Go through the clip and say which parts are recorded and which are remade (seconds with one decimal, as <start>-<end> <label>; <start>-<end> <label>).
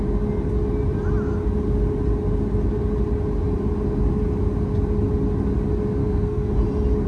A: 0.0-6.0 recorded; 6.0-6.5 remade; 6.5-7.1 recorded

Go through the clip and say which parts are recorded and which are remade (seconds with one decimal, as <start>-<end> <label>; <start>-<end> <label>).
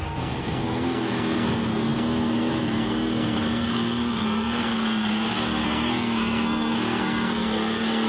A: 0.0-8.1 remade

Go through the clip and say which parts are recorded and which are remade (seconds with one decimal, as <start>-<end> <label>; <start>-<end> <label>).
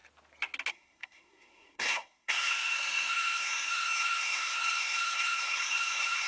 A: 0.0-0.7 recorded; 0.7-6.3 remade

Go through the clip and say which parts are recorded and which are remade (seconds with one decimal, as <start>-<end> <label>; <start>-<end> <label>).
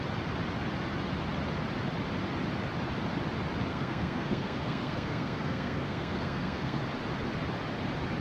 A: 0.0-3.7 recorded; 3.7-6.8 remade; 6.8-8.2 recorded